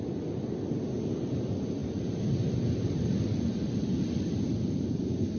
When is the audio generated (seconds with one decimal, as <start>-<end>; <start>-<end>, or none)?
1.8-5.0